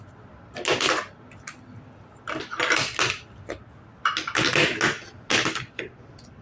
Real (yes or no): yes